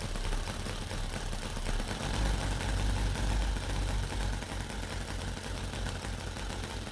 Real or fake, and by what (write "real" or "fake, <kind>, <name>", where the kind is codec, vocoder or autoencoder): real